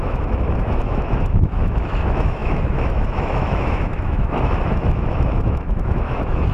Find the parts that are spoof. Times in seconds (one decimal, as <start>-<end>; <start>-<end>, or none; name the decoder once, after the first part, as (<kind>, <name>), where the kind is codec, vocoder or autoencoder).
0.0-6.5 (autoencoder, DAC-VAE)